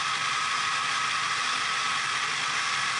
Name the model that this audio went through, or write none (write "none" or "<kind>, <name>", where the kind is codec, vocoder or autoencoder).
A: vocoder, BigVGAN v2